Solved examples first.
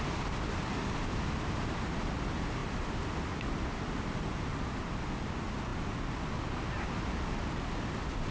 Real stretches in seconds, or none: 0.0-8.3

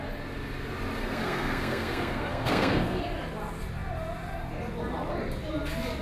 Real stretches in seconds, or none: 0.0-1.0; 3.0-6.0

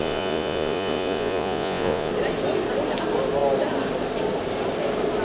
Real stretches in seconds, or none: 2.1-5.2